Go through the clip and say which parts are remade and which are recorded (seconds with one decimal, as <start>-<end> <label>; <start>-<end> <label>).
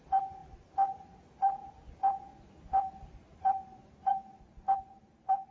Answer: 0.0-3.3 recorded; 3.3-4.1 remade; 4.1-5.5 recorded